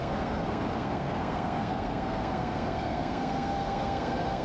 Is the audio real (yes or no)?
no